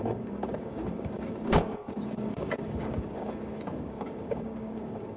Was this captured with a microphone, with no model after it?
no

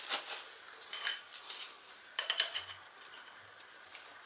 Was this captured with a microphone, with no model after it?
yes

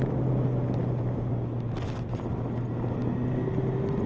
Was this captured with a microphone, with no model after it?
yes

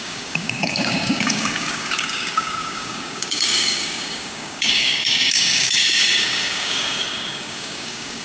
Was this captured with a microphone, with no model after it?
no